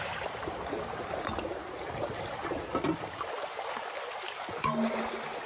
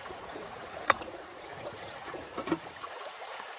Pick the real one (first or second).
first